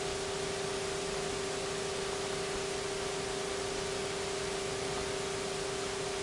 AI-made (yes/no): no